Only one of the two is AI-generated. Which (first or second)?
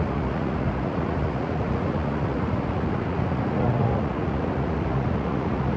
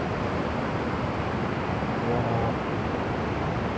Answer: first